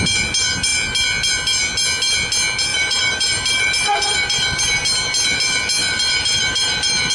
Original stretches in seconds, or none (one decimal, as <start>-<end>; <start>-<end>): 0.0-2.7; 4.6-5.8